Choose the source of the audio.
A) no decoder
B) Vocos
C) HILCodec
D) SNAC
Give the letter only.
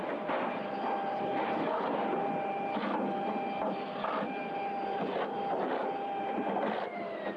A